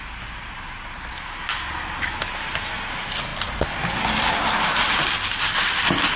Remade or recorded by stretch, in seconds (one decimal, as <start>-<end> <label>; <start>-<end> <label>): 0.0-6.2 recorded